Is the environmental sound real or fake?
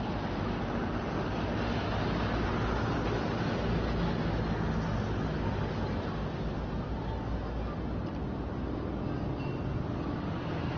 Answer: real